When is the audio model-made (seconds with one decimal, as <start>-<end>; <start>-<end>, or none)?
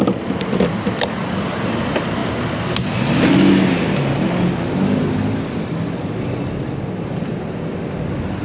none